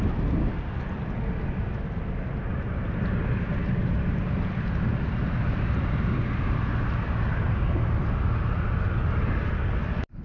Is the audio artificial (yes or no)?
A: no